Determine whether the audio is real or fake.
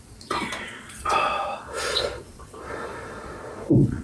fake